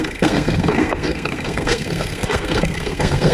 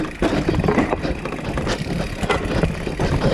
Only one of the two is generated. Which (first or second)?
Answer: first